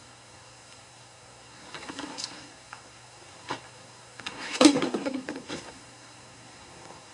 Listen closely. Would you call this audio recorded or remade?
remade